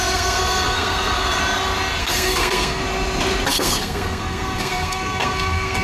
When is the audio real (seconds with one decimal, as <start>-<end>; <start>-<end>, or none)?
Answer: 1.4-2.0; 2.8-3.5